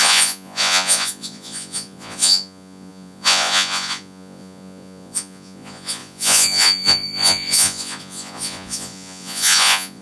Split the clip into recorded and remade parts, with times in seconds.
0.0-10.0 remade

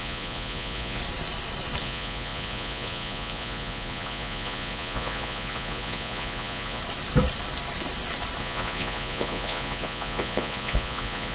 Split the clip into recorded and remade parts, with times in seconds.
0.0-1.0 remade; 1.0-1.8 recorded; 1.8-6.8 remade; 6.8-8.4 recorded; 8.4-11.3 remade

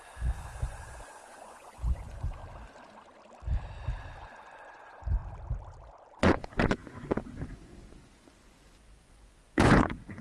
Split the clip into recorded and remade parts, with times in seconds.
0.0-2.4 remade; 2.4-4.1 recorded; 4.1-5.2 remade; 5.2-6.1 recorded; 6.1-10.2 remade

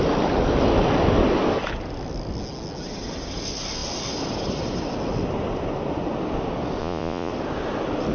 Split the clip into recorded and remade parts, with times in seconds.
0.0-6.8 recorded; 6.8-7.3 remade; 7.3-8.1 recorded

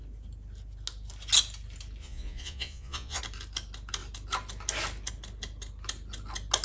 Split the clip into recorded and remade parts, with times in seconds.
0.0-2.0 recorded; 2.0-3.2 remade; 3.2-6.6 recorded

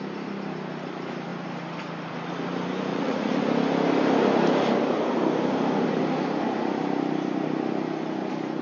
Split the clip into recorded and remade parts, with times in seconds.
0.0-2.9 recorded; 2.9-3.4 remade; 3.4-8.6 recorded

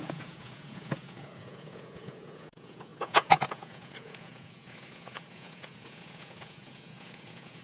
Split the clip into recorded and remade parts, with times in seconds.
0.0-7.6 remade

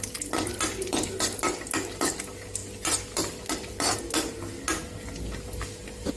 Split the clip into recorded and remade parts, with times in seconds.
0.0-6.2 recorded